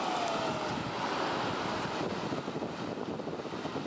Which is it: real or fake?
real